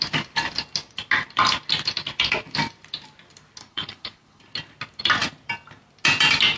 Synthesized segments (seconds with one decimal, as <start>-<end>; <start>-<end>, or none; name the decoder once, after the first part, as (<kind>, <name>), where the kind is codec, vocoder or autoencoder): 3.6-4.4 (codec, HILCodec)